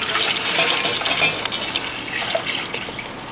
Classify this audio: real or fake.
real